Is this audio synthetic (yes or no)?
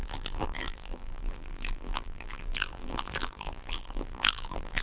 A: yes